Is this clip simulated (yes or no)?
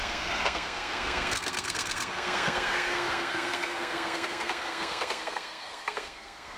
yes